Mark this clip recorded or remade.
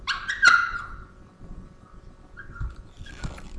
remade